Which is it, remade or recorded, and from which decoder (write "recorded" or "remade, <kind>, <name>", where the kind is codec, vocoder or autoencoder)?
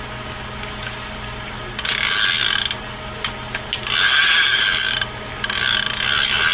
recorded